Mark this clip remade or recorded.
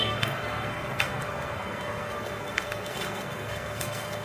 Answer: remade